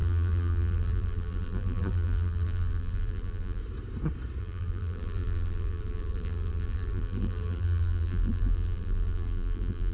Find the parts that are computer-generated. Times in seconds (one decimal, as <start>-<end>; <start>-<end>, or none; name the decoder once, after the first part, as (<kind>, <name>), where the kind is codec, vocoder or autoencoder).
0.0-3.6 (vocoder, BigVGAN v2); 4.4-9.9